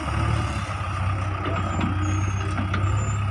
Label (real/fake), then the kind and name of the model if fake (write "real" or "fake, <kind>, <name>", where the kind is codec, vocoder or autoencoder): real